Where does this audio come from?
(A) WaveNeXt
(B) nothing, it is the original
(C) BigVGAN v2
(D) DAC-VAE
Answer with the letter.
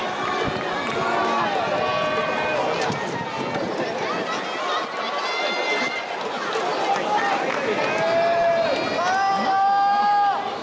B